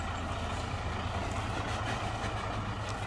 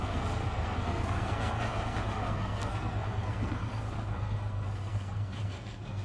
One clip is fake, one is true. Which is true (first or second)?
first